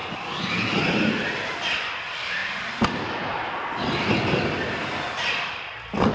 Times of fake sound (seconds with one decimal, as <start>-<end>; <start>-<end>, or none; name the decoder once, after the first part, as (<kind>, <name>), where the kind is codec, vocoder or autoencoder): none